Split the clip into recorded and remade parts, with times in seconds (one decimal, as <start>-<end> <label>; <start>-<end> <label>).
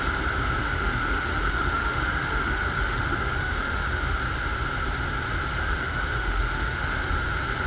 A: 0.0-0.6 recorded; 0.6-4.2 remade; 4.2-5.5 recorded; 5.5-7.1 remade; 7.1-7.7 recorded